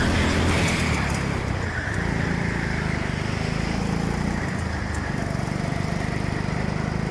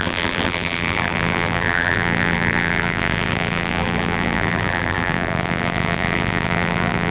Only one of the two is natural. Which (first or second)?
first